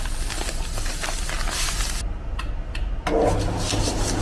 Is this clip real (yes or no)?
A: yes